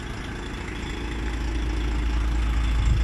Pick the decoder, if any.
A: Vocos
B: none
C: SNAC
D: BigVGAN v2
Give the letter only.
B